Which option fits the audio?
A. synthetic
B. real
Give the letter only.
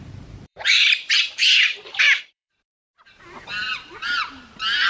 A